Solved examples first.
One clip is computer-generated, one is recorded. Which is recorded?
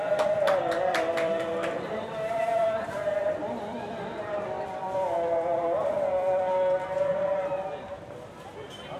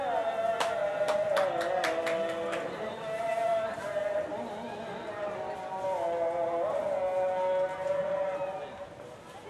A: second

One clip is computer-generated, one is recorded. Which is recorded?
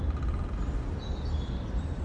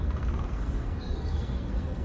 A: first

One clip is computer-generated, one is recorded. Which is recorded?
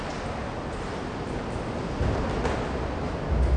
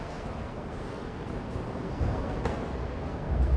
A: first